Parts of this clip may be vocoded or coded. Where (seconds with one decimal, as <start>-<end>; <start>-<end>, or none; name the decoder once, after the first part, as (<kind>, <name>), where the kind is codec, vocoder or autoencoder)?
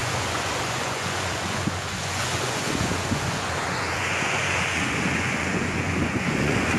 0.0-6.8 (vocoder, Vocos)